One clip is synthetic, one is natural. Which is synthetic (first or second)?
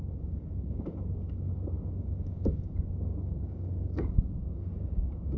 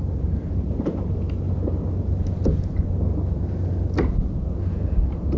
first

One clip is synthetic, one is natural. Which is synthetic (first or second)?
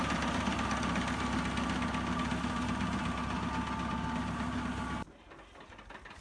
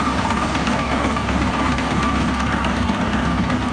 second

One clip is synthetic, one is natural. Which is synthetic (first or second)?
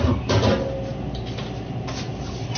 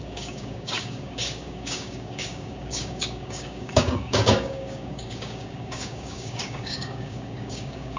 second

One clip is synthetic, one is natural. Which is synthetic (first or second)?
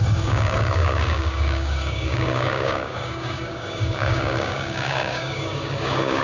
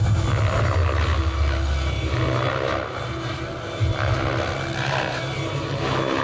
first